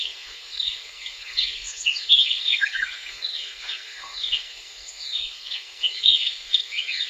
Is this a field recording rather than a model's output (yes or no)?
no